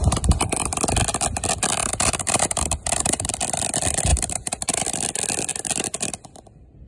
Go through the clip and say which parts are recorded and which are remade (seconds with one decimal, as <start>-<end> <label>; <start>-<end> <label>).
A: 0.0-1.8 recorded; 1.8-3.3 remade; 3.3-4.1 recorded; 4.1-4.8 remade; 4.8-6.9 recorded